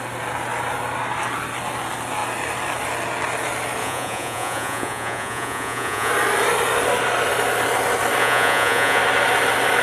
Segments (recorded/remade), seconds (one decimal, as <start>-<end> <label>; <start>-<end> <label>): 0.0-3.8 recorded; 3.8-6.1 remade; 6.1-8.2 recorded; 8.2-9.0 remade; 9.0-9.8 recorded